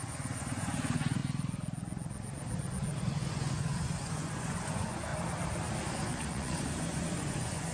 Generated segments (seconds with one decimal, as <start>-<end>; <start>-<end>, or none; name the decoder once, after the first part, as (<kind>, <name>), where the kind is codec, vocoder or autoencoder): 0.0-1.2 (vocoder, Vocos); 3.0-5.1; 5.9-7.7